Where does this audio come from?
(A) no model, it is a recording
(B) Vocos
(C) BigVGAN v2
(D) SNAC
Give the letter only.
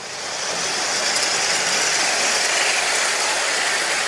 A